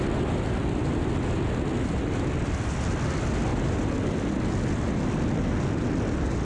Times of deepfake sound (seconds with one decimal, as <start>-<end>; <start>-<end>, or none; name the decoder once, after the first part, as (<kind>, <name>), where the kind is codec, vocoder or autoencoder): none